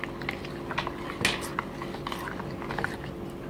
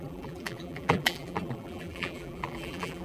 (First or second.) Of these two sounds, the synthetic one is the second